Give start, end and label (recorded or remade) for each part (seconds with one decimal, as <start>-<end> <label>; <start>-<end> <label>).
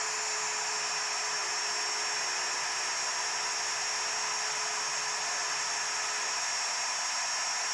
0.0-7.7 recorded